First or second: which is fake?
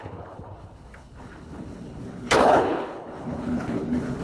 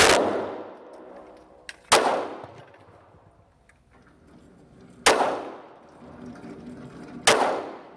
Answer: first